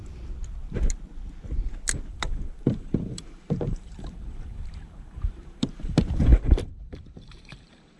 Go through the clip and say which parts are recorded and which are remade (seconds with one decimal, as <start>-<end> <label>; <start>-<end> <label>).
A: 0.0-2.1 recorded; 2.1-8.0 remade

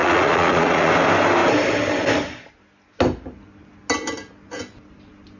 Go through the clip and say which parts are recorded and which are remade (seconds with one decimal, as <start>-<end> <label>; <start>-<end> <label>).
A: 0.0-0.9 remade; 0.9-5.4 recorded

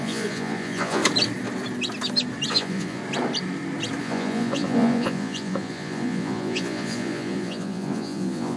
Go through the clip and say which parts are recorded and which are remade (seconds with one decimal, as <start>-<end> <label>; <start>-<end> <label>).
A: 0.0-1.0 remade; 1.0-2.5 recorded; 2.5-3.0 remade; 3.0-4.0 recorded; 4.0-8.6 remade

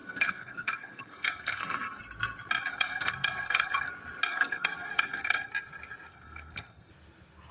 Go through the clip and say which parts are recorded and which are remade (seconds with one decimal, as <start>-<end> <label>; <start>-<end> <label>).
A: 0.0-2.0 remade; 2.0-2.7 recorded; 2.7-3.9 remade; 3.9-4.3 recorded; 4.3-5.5 remade; 5.5-6.1 recorded; 6.1-6.9 remade; 6.9-7.5 recorded